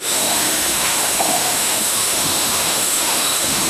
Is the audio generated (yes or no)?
yes